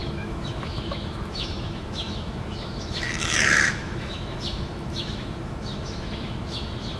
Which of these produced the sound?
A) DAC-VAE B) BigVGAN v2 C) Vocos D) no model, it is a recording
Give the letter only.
A